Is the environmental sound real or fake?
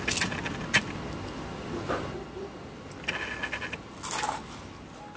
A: real